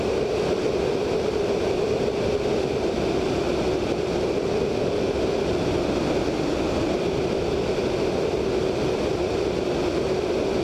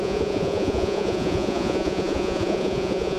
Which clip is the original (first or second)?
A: first